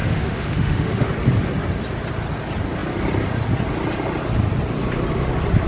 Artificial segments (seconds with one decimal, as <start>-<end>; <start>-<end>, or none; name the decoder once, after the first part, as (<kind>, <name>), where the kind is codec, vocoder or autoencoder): 0.0-1.1 (autoencoder, DAC-VAE)